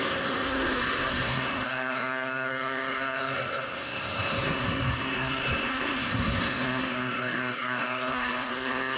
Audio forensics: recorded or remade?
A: remade